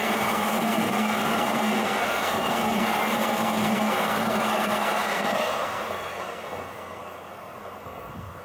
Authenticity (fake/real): fake